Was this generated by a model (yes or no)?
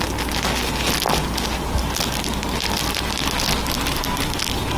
no